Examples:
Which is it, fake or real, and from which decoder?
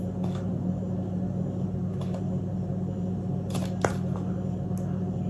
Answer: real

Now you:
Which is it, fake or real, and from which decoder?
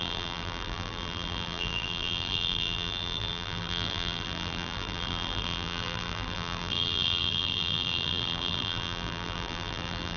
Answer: fake, vocoder, BigVGAN v2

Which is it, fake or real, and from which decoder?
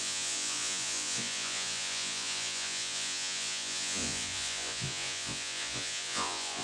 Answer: fake, vocoder, Vocos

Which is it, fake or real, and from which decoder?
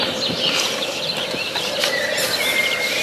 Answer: real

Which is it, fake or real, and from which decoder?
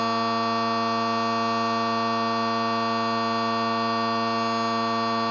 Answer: real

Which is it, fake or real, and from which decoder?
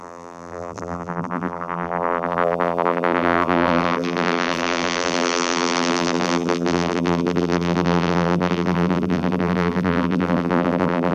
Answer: fake, vocoder, BigVGAN v2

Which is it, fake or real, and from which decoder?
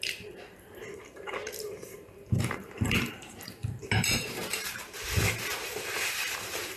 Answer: fake, vocoder, BigVGAN v2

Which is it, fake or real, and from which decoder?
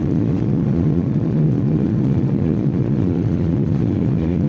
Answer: fake, vocoder, Vocos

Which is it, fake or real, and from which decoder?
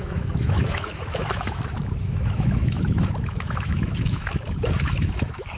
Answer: fake, autoencoder, DAC-VAE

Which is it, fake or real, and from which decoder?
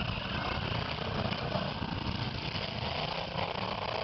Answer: real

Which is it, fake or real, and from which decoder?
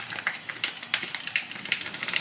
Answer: real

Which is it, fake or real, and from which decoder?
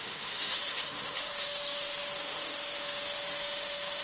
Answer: fake, autoencoder, DAC-VAE